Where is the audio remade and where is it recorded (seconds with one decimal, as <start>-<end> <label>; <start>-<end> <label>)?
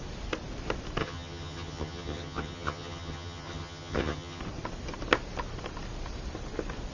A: 0.0-1.0 recorded; 1.0-4.4 remade; 4.4-6.9 recorded